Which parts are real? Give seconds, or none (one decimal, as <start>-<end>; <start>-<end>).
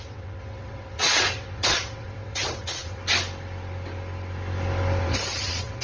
3.0-5.0